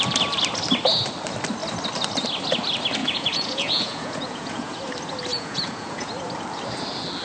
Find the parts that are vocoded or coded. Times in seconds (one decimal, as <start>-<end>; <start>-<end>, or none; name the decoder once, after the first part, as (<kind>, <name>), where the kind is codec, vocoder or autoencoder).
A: 3.0-4.8 (vocoder, Vocos); 5.3-6.1

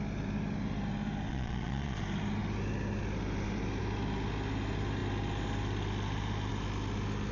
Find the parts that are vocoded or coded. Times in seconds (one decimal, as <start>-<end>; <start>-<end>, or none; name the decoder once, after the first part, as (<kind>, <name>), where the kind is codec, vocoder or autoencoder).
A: 1.3-2.0 (vocoder, Vocos)